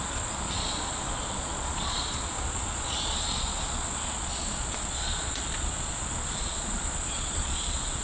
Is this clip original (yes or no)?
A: no